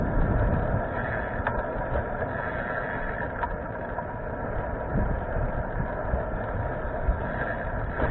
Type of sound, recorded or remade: recorded